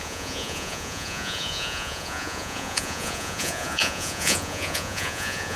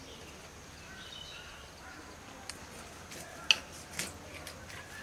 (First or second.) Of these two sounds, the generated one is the first